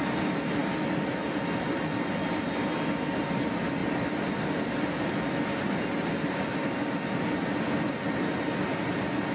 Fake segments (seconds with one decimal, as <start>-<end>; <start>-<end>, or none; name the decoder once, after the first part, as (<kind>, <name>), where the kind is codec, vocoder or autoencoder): none